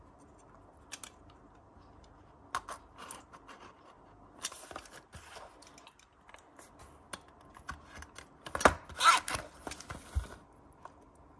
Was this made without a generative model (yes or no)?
yes